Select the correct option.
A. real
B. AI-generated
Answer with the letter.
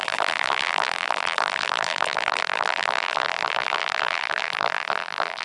B